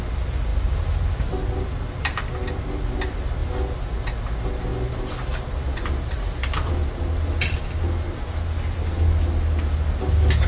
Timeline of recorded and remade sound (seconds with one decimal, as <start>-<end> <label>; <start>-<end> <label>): 0.0-4.7 recorded; 4.7-7.0 remade; 7.0-10.5 recorded